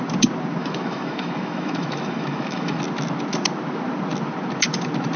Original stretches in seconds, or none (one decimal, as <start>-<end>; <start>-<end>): 0.0-0.6; 2.8-5.2